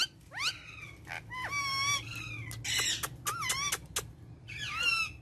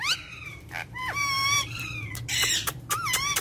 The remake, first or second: second